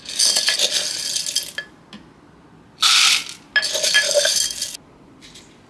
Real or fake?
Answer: real